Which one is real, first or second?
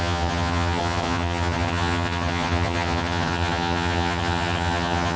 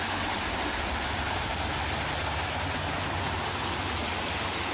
second